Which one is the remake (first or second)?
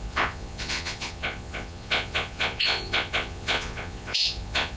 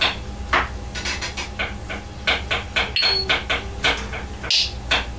first